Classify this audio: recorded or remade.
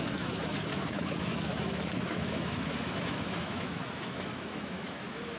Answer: remade